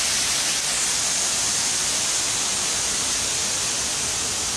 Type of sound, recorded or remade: recorded